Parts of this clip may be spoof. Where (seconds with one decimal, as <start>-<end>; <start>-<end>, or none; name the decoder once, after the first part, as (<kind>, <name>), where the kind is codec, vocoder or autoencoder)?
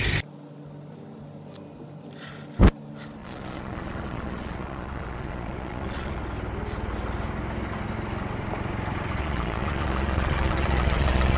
3.2-6.2 (vocoder, Vocos); 9.2-11.4